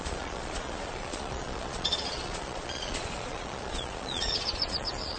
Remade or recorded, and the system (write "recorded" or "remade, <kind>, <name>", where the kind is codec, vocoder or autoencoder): remade, vocoder, Vocos